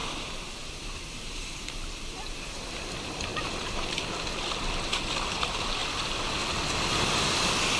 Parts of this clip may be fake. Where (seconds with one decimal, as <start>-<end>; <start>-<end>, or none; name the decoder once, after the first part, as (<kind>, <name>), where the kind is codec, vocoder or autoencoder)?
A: 0.0-2.6 (vocoder, BigVGAN v2); 3.3-4.1

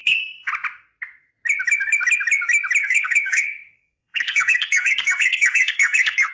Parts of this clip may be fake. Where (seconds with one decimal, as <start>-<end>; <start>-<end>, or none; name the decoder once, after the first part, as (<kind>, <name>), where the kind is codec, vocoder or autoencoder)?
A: 0.0-0.5 (codec, SNAC); 2.8-6.3

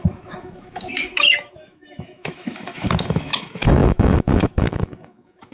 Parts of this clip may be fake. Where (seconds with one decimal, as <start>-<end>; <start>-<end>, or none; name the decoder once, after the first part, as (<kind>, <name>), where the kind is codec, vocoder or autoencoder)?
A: 0.0-5.5 (autoencoder, DAC-VAE)

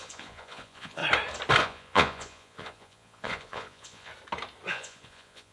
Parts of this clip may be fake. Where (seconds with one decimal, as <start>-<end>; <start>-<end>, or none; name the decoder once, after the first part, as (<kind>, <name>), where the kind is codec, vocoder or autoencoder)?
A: 0.0-1.0 (vocoder, Vocos); 1.6-4.1; 4.7-5.5

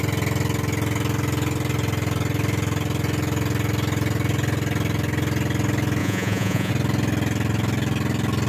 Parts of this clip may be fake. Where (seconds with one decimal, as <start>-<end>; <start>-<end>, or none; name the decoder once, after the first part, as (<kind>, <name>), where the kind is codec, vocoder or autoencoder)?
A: 6.0-6.7 (vocoder, Vocos)

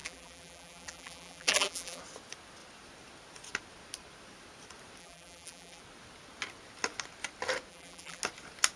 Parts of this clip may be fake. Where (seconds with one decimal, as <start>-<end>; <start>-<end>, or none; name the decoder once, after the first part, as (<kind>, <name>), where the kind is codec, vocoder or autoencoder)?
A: 0.0-2.0 (vocoder, BigVGAN v2); 5.0-5.8; 7.7-8.2